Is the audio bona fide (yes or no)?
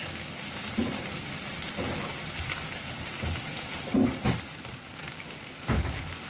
yes